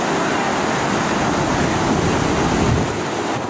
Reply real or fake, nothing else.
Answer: real